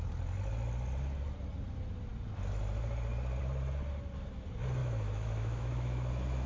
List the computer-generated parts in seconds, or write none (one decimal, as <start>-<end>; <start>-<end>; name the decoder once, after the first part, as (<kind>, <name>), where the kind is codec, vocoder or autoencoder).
4.8-6.1 (autoencoder, DAC-VAE)